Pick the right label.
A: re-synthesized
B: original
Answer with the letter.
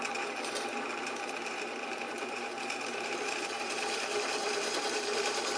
A